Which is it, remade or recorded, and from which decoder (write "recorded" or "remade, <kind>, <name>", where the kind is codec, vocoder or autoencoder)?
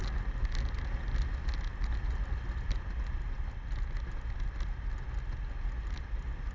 recorded